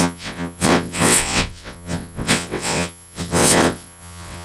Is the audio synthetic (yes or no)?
yes